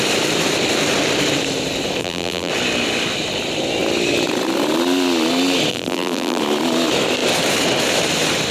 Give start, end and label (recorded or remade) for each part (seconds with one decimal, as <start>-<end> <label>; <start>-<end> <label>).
0.0-2.0 recorded; 2.0-2.5 remade; 2.5-5.7 recorded; 5.7-6.4 remade; 6.4-8.5 recorded

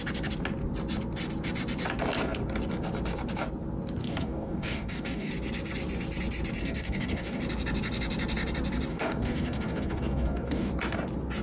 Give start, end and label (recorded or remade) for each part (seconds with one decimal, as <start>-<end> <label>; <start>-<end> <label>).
0.0-4.0 recorded; 4.0-5.3 remade; 5.3-6.6 recorded; 6.6-7.4 remade; 7.4-8.9 recorded; 8.9-10.7 remade; 10.7-11.4 recorded

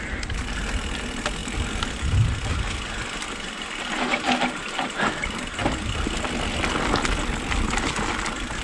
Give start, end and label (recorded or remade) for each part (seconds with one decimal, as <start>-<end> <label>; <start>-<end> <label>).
0.0-8.6 recorded

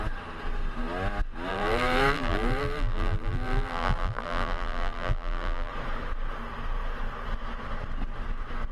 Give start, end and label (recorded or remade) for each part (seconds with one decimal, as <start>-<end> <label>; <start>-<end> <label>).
0.0-1.5 recorded; 1.5-5.7 remade; 5.7-8.7 recorded

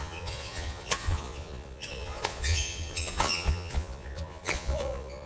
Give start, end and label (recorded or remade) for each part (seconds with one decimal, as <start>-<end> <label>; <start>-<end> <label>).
0.0-5.3 remade